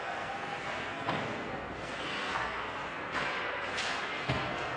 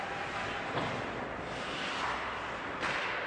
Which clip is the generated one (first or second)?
first